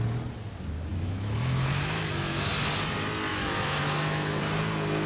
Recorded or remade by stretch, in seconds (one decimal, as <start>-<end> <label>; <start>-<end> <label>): 0.0-0.9 recorded; 0.9-2.5 remade; 2.5-3.3 recorded; 3.3-4.4 remade; 4.4-5.1 recorded